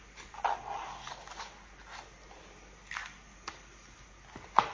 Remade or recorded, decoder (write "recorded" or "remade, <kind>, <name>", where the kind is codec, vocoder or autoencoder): recorded